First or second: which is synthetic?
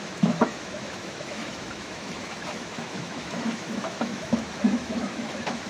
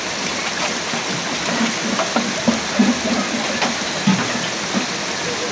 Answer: first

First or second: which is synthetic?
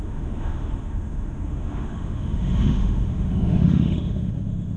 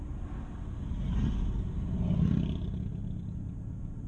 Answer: first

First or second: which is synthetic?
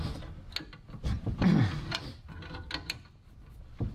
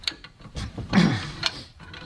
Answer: second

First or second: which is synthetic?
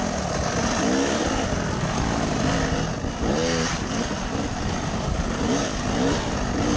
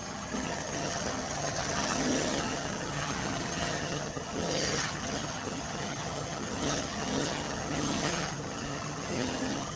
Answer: second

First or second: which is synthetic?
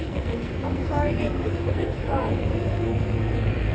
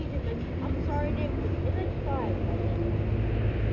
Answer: first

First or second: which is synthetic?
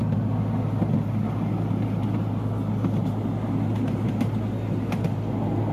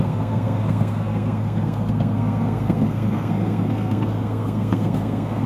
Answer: second